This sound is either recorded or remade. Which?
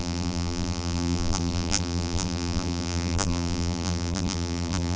remade